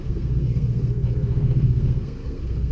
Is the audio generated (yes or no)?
yes